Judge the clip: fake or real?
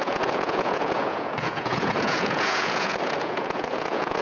fake